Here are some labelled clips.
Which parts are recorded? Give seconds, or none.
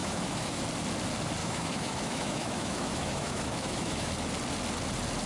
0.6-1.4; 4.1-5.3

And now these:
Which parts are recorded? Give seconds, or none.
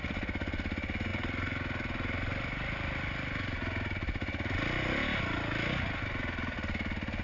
0.0-7.2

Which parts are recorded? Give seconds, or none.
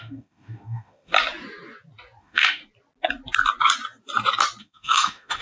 1.1-2.2; 2.6-4.6